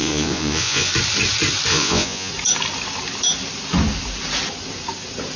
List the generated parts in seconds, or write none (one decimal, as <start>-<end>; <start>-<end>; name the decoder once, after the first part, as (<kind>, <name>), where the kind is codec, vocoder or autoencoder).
0.0-0.9 (vocoder, Vocos); 1.7-2.3